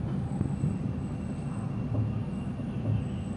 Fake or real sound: real